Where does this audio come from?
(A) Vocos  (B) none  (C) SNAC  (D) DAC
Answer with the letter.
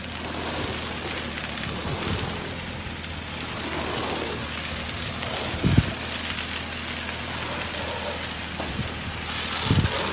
B